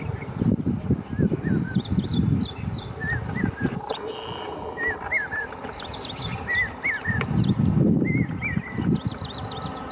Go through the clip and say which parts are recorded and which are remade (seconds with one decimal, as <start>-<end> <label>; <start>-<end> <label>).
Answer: 0.0-9.9 recorded

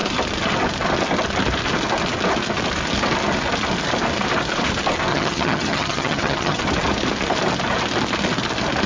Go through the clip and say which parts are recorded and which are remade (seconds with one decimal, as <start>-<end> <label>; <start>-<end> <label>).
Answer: 0.0-5.1 recorded; 5.1-6.6 remade; 6.6-8.9 recorded

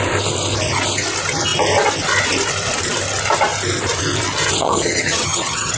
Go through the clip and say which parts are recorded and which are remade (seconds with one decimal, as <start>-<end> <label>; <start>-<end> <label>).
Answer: 0.0-4.6 recorded; 4.6-5.8 remade

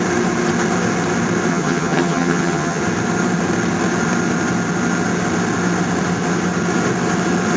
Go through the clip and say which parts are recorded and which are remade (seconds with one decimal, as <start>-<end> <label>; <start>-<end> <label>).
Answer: 0.0-1.5 recorded; 1.5-2.8 remade; 2.8-7.6 recorded

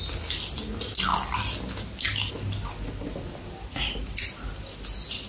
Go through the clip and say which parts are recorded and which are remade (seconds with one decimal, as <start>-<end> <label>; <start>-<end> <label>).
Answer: 0.0-5.3 recorded

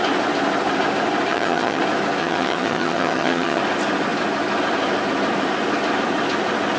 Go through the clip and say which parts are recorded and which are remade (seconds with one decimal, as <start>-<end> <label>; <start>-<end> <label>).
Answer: 0.0-1.3 recorded; 1.3-1.8 remade; 1.8-2.2 recorded; 2.2-3.6 remade; 3.6-6.8 recorded

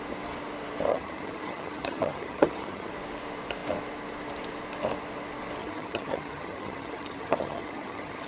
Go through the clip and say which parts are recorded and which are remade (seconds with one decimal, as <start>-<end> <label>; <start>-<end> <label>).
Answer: 0.0-0.9 recorded; 0.9-2.9 remade; 2.9-5.6 recorded; 5.6-8.3 remade

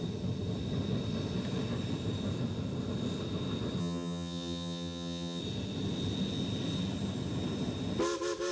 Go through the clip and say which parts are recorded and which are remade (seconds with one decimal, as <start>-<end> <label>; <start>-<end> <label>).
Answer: 0.0-3.8 recorded; 3.8-5.4 remade; 5.4-8.5 recorded